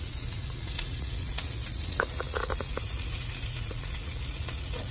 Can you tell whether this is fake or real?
fake